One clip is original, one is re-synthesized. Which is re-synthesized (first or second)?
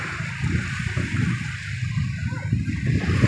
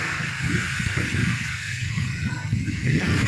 second